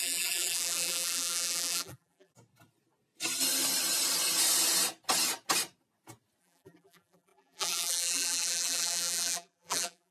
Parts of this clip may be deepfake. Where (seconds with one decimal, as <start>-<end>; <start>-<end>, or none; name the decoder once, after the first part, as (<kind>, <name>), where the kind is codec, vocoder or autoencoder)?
0.0-2.3 (vocoder, BigVGAN v2); 6.4-10.1